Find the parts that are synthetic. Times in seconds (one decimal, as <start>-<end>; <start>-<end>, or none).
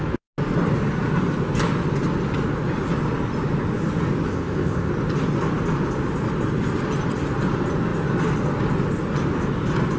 4.3-4.9